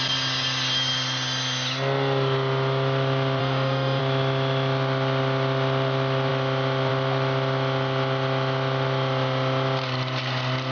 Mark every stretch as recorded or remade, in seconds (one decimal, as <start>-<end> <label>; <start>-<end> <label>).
0.0-3.4 recorded; 3.4-4.0 remade; 4.0-10.7 recorded